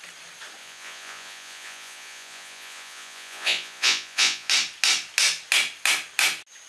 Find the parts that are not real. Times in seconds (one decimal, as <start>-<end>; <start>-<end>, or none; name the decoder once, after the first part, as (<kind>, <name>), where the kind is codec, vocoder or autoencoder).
0.6-4.5 (vocoder, Vocos)